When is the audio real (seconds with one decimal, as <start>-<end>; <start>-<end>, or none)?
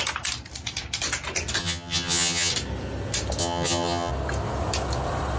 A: 0.0-1.6; 2.5-3.4; 4.1-5.4